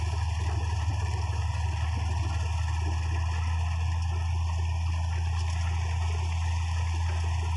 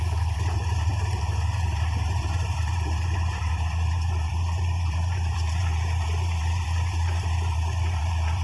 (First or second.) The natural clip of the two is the first